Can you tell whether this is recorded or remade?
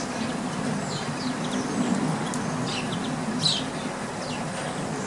recorded